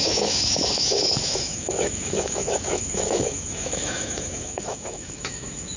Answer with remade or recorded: remade